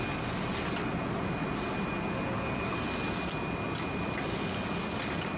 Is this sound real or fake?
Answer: real